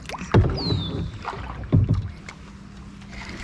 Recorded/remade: recorded